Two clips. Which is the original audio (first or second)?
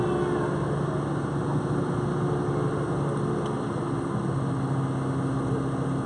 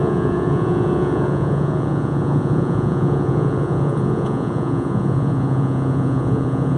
first